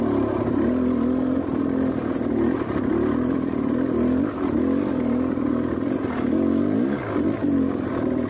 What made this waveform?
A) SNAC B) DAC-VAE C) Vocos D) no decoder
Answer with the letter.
D